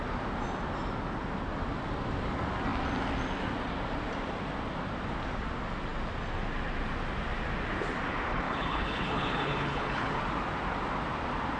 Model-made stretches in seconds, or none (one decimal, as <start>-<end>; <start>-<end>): 8.3-10.2